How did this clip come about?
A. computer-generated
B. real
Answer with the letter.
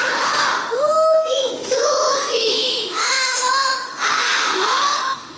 A